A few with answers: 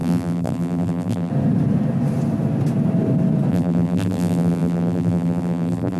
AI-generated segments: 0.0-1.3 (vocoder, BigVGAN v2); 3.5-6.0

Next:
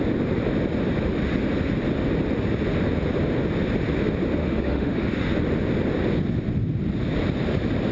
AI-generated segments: 4.4-5.3 (autoencoder, DAC-VAE)

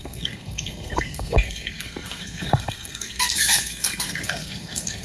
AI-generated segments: 0.0-5.0 (codec, SNAC)